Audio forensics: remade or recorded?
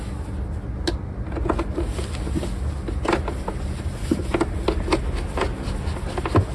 recorded